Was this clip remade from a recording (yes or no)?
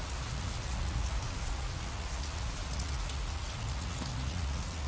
yes